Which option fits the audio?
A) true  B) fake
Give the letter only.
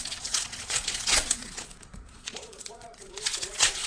B